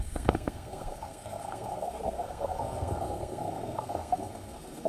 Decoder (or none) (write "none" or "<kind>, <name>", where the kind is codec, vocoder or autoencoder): codec, SNAC